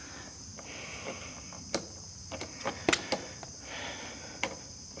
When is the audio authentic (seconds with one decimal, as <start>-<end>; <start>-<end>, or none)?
0.0-5.0

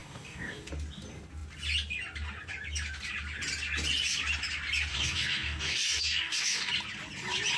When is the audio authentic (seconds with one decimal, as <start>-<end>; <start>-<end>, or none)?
0.7-4.9; 6.7-7.6

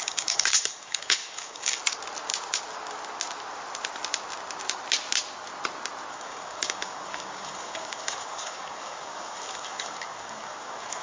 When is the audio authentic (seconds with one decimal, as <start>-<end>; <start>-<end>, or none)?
1.8-6.1